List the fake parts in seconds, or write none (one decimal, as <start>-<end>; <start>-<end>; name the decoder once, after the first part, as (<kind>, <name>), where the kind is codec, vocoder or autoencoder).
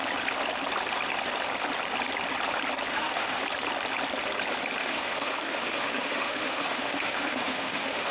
2.9-3.4 (autoencoder, DAC-VAE); 4.8-8.1